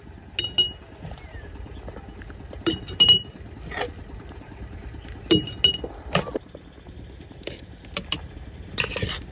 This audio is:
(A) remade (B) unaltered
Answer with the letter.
B